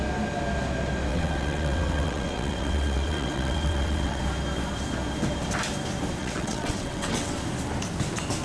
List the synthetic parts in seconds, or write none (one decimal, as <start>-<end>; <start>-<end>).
1.1-4.2; 6.2-7.3